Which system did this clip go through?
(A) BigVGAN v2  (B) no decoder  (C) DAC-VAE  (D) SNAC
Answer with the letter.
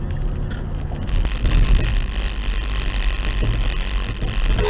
B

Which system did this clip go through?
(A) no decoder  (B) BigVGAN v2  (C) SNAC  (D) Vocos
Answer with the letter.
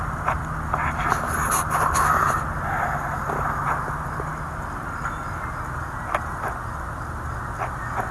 A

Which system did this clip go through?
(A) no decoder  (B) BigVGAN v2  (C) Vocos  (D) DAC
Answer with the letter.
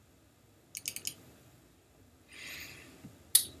A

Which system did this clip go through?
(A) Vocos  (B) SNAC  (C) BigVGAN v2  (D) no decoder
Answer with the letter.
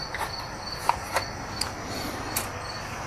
D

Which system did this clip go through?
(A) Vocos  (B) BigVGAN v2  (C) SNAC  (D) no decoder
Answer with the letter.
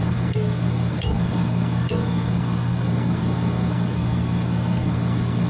C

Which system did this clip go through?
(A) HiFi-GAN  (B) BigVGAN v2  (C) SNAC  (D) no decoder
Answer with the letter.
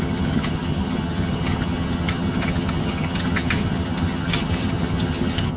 A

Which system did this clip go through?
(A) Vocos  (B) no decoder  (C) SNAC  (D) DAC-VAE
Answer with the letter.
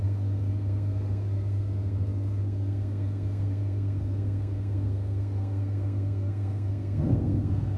C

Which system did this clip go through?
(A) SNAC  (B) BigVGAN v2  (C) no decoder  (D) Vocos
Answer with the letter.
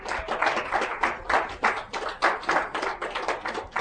C